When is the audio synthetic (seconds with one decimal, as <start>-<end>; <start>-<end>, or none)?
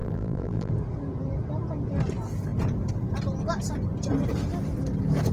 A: 0.0-0.7